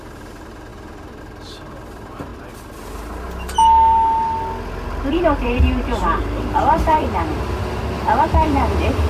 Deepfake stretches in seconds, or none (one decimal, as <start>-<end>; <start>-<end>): 0.0-2.3; 5.1-7.3; 7.8-9.1

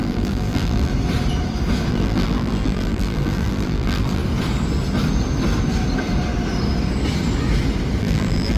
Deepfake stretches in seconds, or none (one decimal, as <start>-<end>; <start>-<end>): 0.0-0.9; 1.9-4.2; 8.0-8.6

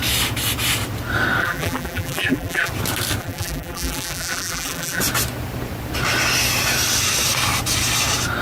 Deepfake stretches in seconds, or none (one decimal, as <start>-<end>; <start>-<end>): 1.4-2.7; 3.2-5.0

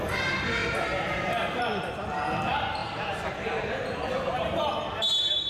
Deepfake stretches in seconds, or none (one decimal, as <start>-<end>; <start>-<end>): 0.6-1.9; 2.8-4.7